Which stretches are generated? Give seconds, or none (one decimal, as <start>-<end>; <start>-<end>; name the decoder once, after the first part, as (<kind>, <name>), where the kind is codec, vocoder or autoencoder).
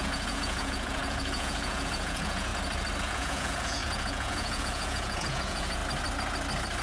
0.0-2.5 (vocoder, Vocos); 3.0-5.8